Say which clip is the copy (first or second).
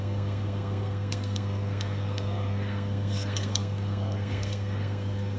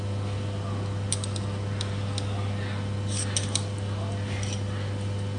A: first